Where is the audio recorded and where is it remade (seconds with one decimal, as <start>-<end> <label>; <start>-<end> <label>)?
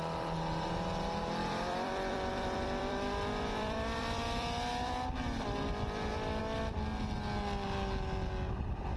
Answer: 0.0-1.4 recorded; 1.4-6.4 remade; 6.4-9.0 recorded